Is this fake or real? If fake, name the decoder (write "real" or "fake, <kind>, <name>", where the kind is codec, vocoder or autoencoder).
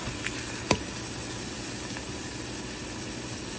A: real